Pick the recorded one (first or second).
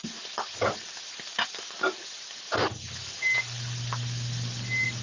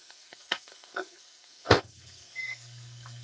first